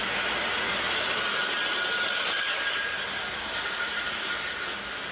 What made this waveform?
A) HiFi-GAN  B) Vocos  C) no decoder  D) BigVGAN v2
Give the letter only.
C